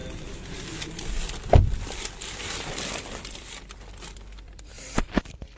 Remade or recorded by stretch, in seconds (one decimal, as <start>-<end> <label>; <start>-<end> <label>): 0.0-5.6 remade